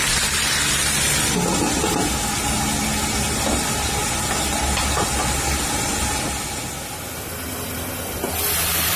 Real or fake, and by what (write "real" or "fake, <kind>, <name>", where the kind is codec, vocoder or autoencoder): real